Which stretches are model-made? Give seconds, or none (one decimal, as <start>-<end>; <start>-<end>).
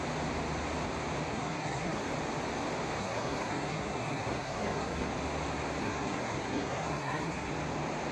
1.3-2.0; 3.0-5.1; 5.8-7.5